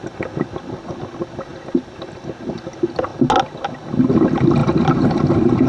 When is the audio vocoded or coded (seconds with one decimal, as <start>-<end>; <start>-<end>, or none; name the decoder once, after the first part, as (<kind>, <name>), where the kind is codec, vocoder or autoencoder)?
none